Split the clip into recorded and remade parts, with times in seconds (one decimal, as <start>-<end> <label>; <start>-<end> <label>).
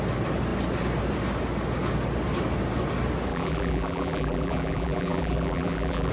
0.0-3.3 recorded; 3.3-6.1 remade